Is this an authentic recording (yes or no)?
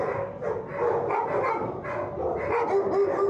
yes